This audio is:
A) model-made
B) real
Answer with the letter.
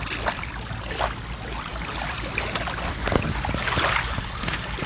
B